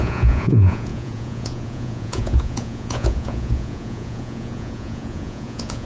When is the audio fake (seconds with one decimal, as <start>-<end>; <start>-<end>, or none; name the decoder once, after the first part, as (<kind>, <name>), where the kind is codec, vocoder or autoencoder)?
0.0-5.9 (vocoder, Vocos)